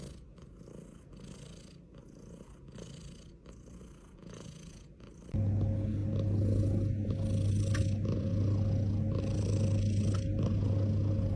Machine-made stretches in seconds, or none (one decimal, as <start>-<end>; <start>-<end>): 4.2-4.9